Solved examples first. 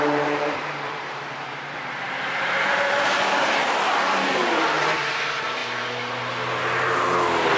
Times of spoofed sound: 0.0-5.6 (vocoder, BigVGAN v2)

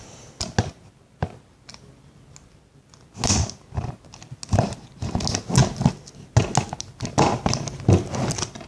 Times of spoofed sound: none

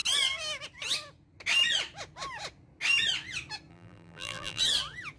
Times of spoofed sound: 3.7-4.6 (vocoder, BigVGAN v2)

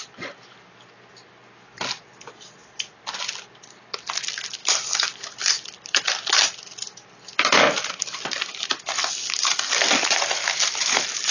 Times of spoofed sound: 2.6-3.7 (vocoder, BigVGAN v2); 4.6-8.5